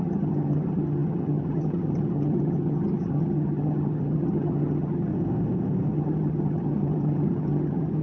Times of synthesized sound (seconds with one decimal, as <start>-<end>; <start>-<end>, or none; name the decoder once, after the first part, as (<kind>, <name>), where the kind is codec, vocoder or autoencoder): 0.0-5.1 (vocoder, HiFi-GAN); 5.9-8.0